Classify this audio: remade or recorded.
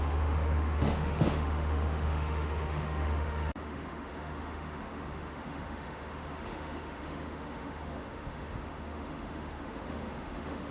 remade